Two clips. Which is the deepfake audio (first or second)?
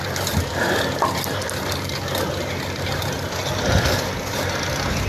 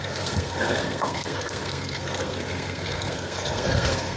second